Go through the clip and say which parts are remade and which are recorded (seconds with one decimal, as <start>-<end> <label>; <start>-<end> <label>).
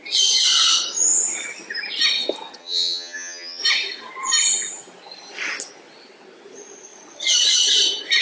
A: 0.0-2.6 recorded; 2.6-3.6 remade; 3.6-8.2 recorded